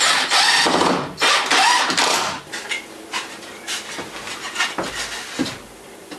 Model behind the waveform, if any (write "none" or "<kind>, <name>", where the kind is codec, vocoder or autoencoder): none